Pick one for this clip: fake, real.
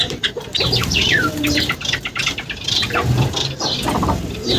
fake